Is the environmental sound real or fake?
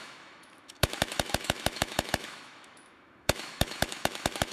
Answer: fake